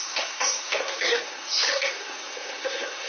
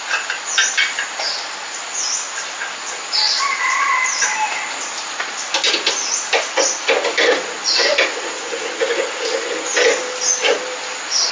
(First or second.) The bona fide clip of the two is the second